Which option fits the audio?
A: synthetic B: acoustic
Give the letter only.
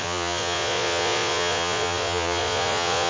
A